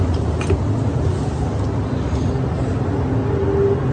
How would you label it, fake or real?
real